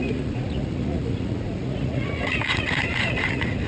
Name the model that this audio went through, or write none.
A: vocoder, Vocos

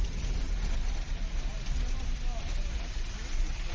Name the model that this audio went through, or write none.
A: none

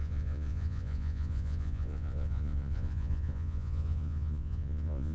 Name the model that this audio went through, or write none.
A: vocoder, Vocos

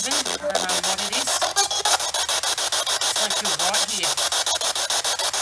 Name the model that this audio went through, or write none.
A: none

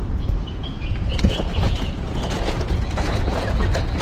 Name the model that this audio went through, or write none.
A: vocoder, Vocos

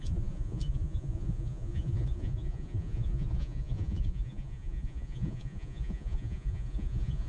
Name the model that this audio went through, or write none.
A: vocoder, Vocos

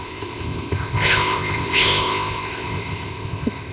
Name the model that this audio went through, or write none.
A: codec, ZipCodec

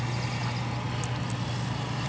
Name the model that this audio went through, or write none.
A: none